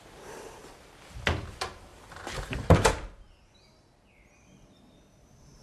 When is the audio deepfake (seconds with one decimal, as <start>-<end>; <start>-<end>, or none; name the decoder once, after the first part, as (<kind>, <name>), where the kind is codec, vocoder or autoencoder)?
1.9-2.9 (vocoder, BigVGAN v2)